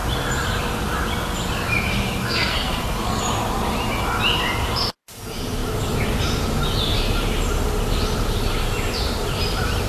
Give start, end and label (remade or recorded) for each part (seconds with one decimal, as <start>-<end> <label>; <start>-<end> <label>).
0.0-2.2 recorded; 2.2-3.2 remade; 3.2-9.9 recorded